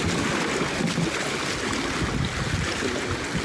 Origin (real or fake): real